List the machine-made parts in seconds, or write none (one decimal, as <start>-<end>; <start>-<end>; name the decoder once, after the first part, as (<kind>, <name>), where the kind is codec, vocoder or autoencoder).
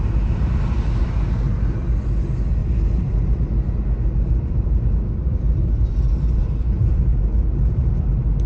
2.6-3.5 (vocoder, BigVGAN v2); 5.2-5.9; 6.4-7.9